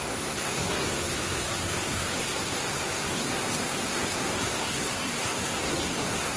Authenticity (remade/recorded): remade